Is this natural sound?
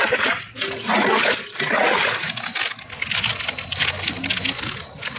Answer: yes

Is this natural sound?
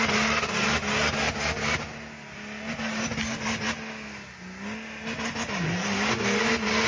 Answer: yes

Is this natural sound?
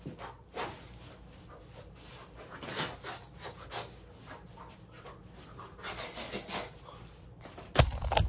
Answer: yes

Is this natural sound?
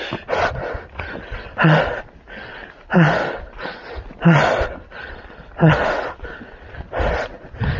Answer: yes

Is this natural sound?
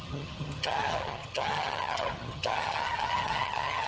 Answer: no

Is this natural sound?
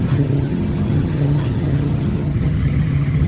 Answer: no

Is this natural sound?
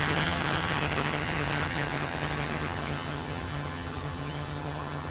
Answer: no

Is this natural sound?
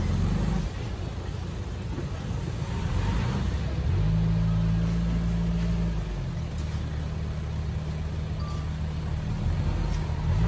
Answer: yes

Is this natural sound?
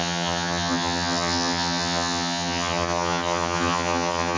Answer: no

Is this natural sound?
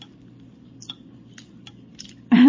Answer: yes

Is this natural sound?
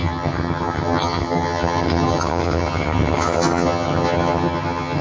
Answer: no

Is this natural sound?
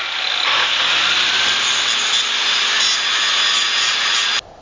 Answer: yes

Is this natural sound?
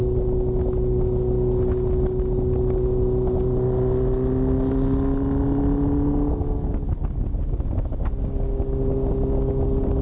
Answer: yes